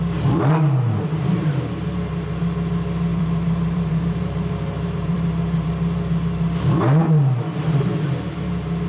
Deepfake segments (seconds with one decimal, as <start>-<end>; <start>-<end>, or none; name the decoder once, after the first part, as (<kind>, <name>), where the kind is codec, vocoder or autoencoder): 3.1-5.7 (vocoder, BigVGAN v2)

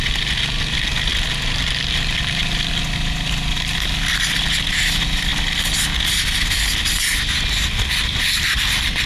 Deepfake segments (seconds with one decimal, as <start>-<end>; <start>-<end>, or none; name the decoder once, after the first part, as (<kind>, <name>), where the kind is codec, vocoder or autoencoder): none

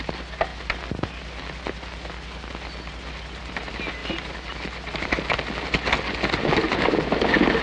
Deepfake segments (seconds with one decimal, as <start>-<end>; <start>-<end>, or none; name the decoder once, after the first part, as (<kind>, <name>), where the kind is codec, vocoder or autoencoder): 0.5-3.1 (vocoder, BigVGAN v2); 4.0-5.1

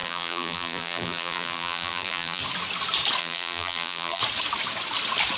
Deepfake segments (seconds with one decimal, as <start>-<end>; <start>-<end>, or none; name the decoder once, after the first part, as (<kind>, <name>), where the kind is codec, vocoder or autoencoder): 0.0-2.4 (vocoder, BigVGAN v2); 3.2-4.2

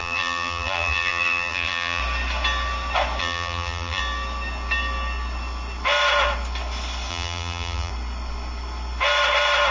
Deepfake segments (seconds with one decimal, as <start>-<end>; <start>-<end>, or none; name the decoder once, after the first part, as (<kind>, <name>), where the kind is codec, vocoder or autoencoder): 0.0-2.0 (vocoder, BigVGAN v2); 3.2-4.0; 7.1-7.9

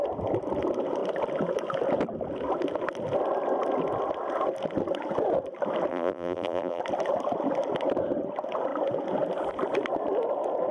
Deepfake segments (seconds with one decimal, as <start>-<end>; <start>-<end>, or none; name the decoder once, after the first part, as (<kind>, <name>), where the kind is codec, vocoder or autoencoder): 5.9-6.8 (vocoder, BigVGAN v2)

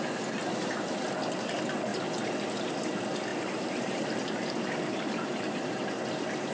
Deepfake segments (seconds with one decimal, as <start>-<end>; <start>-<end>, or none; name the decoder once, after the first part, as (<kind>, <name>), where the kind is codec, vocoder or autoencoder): 1.9-2.7 (vocoder, BigVGAN v2); 3.3-6.5

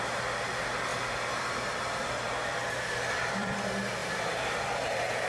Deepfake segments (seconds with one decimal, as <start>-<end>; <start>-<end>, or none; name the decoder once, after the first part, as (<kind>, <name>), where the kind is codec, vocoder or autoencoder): 0.9-3.5 (vocoder, BigVGAN v2); 4.0-5.3